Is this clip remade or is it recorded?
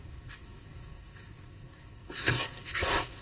remade